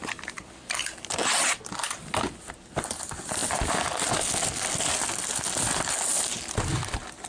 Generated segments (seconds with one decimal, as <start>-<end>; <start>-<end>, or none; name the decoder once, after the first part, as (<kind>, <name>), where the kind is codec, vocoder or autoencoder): none